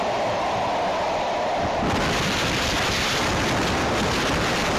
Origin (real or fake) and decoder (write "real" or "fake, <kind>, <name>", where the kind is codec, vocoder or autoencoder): real